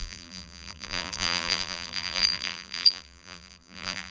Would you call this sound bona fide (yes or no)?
no